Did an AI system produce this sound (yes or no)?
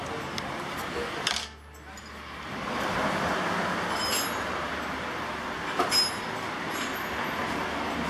no